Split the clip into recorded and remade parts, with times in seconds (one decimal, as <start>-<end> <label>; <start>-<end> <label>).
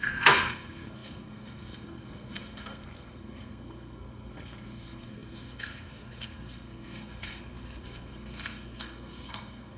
0.0-9.8 remade